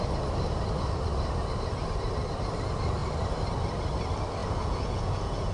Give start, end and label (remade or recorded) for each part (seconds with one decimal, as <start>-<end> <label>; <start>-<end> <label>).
0.0-4.4 recorded; 4.4-5.5 remade